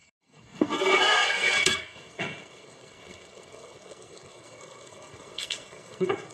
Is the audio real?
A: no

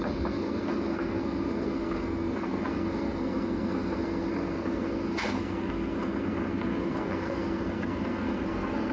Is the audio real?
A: no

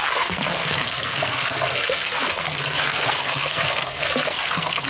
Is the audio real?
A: no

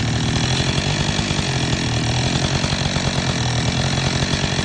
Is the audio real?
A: yes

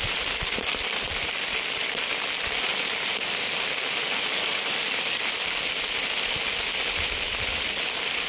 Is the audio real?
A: yes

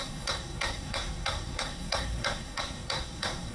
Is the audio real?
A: no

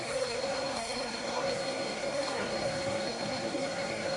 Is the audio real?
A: no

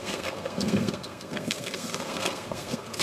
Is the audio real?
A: no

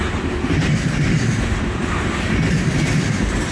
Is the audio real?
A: yes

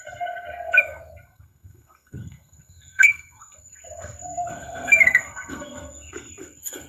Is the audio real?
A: no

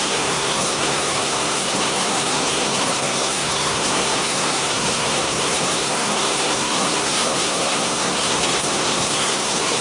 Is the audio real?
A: no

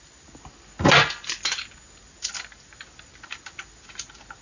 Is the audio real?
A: yes